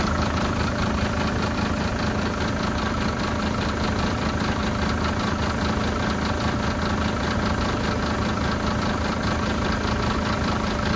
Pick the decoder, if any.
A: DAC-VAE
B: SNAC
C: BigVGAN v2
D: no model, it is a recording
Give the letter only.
D